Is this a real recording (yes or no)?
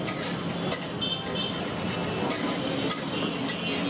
yes